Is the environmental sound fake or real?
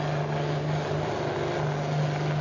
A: real